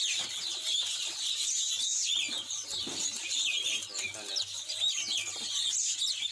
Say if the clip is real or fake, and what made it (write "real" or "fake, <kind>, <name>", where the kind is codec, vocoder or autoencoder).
real